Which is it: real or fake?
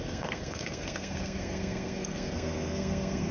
fake